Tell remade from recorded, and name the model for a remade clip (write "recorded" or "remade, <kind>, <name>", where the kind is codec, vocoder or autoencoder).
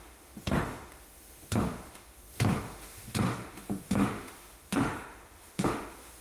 remade, autoencoder, DAC-VAE